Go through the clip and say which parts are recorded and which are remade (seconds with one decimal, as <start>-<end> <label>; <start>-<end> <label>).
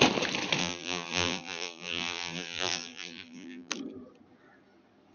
0.0-0.6 recorded; 0.6-3.7 remade; 3.7-5.1 recorded